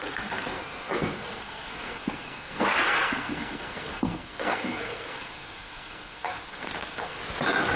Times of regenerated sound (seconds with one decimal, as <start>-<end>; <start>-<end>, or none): 0.0-7.2